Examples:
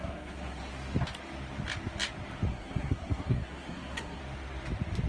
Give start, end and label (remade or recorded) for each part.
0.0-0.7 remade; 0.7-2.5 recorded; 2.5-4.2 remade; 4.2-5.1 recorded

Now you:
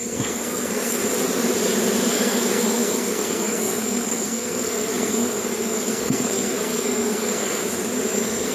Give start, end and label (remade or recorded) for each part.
0.0-1.0 remade; 1.0-2.1 recorded; 2.1-7.6 remade; 7.6-8.1 recorded; 8.1-8.5 remade

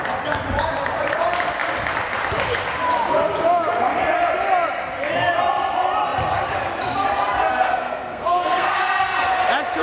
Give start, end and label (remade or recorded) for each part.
0.0-7.5 recorded; 7.5-8.8 remade; 8.8-9.8 recorded

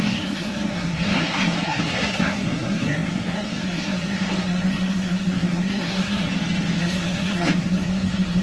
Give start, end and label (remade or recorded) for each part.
0.0-6.3 remade; 6.3-6.8 recorded; 6.8-8.4 remade

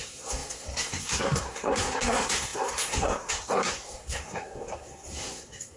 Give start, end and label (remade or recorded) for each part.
0.0-5.8 remade

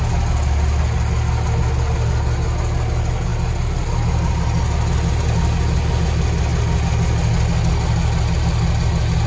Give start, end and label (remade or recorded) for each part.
0.0-9.3 recorded

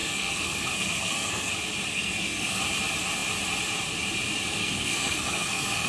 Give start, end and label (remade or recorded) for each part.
0.0-1.5 remade; 1.5-1.9 recorded; 1.9-2.6 remade; 2.6-4.6 recorded; 4.6-5.9 remade

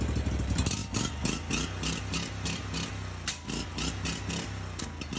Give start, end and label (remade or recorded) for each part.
0.0-5.2 recorded